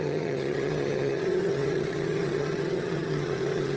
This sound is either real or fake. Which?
fake